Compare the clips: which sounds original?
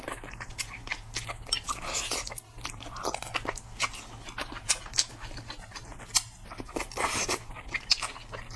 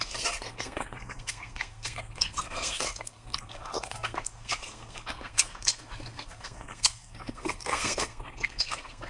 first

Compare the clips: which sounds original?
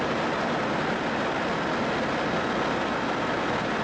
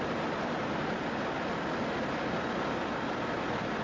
first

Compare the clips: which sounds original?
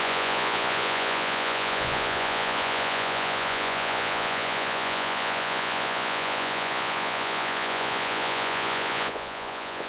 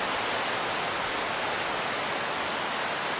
second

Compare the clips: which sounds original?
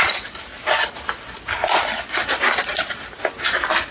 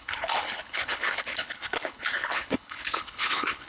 first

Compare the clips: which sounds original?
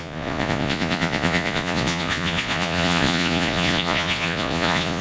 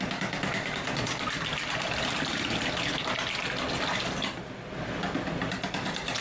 second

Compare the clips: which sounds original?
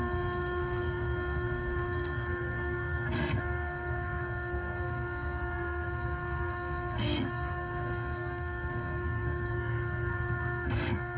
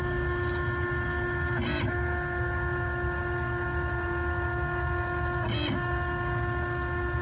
second